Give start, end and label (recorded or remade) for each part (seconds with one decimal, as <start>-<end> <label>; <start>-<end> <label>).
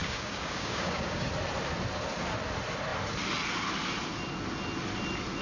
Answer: 0.0-1.3 remade; 1.3-5.4 recorded